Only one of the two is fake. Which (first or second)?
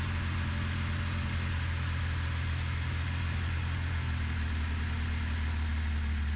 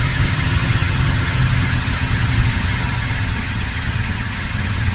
second